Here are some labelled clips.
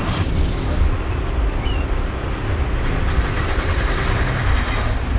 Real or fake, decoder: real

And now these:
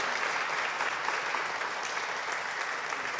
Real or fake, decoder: real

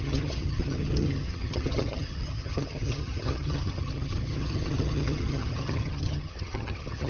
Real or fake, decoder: fake, vocoder, HiFi-GAN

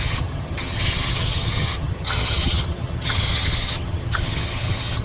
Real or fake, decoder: fake, vocoder, HiFi-GAN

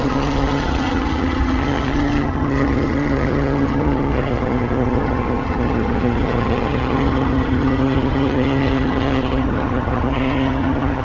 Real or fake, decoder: fake, vocoder, HiFi-GAN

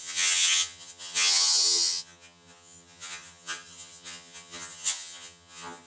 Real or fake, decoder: fake, vocoder, HiFi-GAN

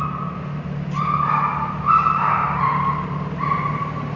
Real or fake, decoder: real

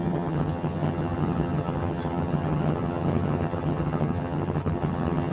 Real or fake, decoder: fake, vocoder, HiFi-GAN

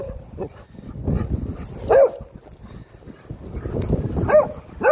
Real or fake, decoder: real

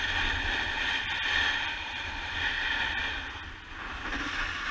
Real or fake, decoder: real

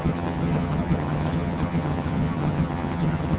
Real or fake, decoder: fake, vocoder, HiFi-GAN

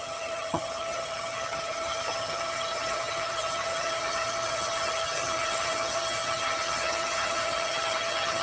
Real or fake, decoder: fake, vocoder, HiFi-GAN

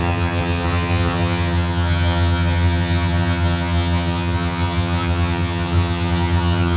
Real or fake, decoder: fake, vocoder, HiFi-GAN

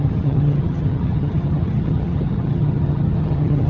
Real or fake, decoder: fake, vocoder, HiFi-GAN